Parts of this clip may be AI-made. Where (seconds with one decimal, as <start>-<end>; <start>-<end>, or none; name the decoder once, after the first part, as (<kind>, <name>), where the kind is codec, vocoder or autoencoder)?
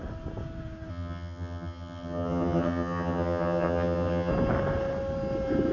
0.9-4.3 (vocoder, HiFi-GAN)